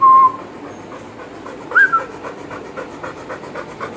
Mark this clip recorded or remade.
recorded